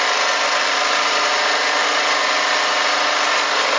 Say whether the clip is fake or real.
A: real